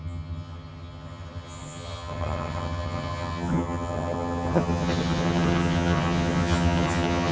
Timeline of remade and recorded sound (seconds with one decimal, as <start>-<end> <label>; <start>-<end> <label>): 0.0-7.3 remade